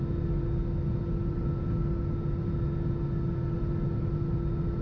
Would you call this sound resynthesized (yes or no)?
no